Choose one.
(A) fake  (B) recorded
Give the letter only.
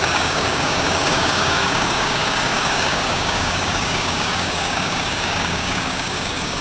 A